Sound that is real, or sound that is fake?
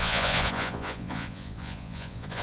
fake